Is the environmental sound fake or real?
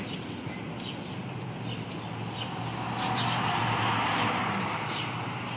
real